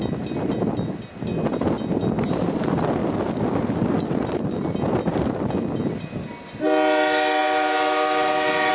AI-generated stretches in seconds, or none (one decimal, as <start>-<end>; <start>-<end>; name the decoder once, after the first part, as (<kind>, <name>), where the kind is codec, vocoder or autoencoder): 3.0-6.2 (vocoder, BigVGAN v2)